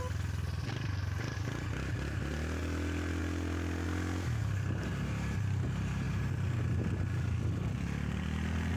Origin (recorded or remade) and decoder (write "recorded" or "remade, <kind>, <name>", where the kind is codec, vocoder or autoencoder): recorded